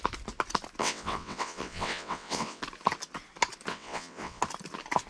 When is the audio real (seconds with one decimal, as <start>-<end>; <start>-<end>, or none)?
0.0-0.8; 2.6-3.7; 4.4-5.1

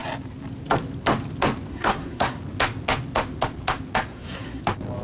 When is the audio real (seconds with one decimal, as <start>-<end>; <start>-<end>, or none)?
0.0-1.7; 2.4-4.1; 4.6-5.0

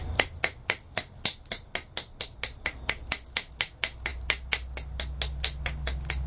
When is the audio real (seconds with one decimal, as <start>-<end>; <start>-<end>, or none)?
0.0-6.3

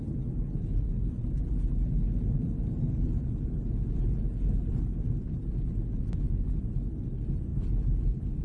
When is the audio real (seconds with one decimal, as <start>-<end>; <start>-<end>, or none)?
0.0-8.4

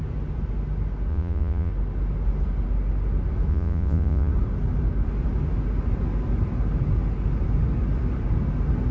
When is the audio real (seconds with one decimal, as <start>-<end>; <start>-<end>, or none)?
0.0-1.1; 1.7-3.5; 4.3-8.9

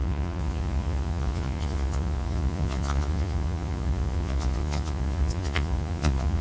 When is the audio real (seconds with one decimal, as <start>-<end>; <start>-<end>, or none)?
none